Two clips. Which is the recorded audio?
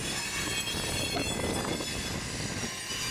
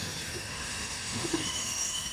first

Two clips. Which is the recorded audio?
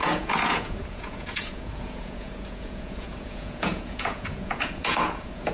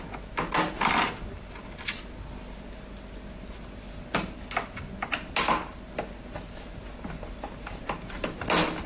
second